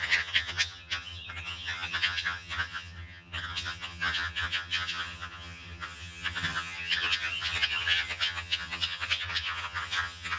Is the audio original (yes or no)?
no